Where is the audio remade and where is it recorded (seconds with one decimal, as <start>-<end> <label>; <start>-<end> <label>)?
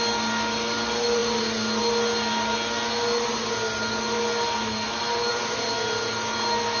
0.0-6.8 recorded